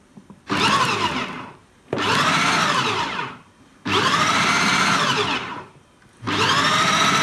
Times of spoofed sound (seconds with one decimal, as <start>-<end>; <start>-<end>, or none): 2.6-6.0